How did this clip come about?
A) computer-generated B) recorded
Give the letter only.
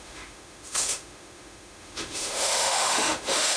A